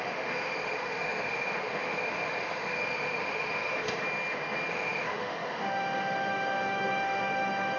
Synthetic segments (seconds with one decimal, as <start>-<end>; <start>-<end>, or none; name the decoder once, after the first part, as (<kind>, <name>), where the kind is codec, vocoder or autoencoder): 0.0-4.0 (autoencoder, DAC-VAE); 4.7-7.8